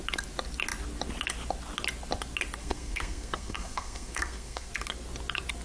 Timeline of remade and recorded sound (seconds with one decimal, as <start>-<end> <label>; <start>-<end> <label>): 0.0-2.6 recorded; 2.6-4.7 remade; 4.7-5.6 recorded